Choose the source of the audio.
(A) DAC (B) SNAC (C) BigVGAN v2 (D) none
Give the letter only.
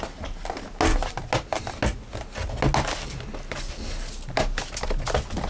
D